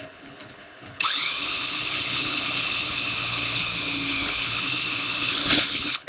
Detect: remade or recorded remade